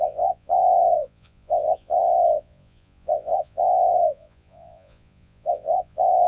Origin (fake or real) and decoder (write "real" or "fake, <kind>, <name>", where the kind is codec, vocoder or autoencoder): fake, vocoder, Vocos